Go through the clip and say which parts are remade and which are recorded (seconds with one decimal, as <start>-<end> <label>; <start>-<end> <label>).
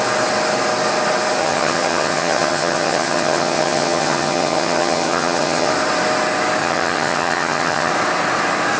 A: 0.0-1.4 recorded; 1.4-5.7 remade; 5.7-6.6 recorded; 6.6-7.9 remade; 7.9-8.8 recorded